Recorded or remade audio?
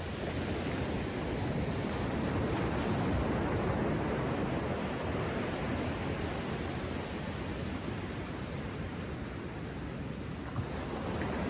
recorded